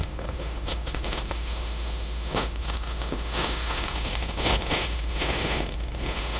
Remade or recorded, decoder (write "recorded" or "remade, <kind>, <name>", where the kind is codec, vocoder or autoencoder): remade, autoencoder, DAC-VAE